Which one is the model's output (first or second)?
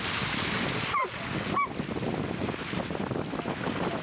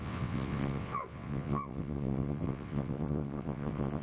second